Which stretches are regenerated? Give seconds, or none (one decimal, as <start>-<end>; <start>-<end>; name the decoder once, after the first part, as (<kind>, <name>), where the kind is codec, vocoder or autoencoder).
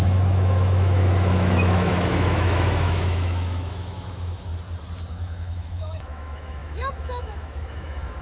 0.0-4.5 (autoencoder, DAC-VAE); 5.1-8.2